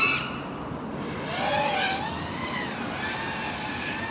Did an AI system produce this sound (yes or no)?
no